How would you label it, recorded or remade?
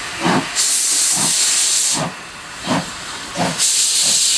recorded